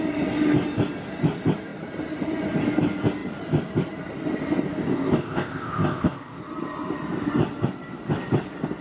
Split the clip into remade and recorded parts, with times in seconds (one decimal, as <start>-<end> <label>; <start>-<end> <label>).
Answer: 0.0-4.9 recorded; 4.9-6.4 remade; 6.4-8.8 recorded